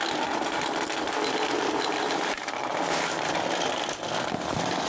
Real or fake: real